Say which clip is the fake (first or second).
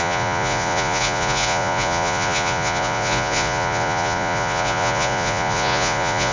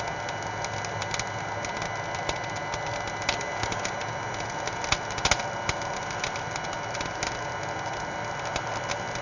first